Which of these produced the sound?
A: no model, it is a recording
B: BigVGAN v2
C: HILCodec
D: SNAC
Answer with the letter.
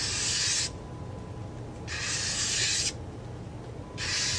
A